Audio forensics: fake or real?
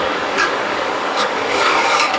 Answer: fake